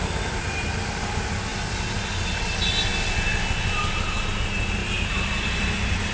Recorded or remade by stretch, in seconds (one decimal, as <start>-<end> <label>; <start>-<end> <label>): 0.0-4.8 recorded; 4.8-5.3 remade; 5.3-6.1 recorded